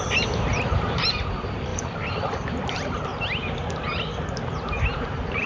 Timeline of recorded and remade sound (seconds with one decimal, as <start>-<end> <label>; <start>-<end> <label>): 0.0-0.5 recorded; 0.5-1.1 remade; 1.1-1.7 recorded; 1.7-2.5 remade; 2.5-4.9 recorded; 4.9-5.5 remade